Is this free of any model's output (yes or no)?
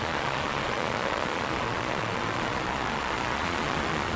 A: no